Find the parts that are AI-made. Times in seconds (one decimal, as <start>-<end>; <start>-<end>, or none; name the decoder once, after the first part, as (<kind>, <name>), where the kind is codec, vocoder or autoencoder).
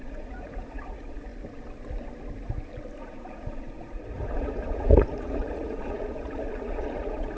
0.0-1.3 (vocoder, Vocos); 3.0-7.4